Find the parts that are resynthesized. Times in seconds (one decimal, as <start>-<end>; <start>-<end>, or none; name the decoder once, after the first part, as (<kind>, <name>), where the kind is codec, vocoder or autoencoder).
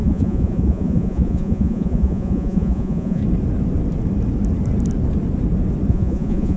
0.0-3.2 (vocoder, Vocos); 5.9-6.6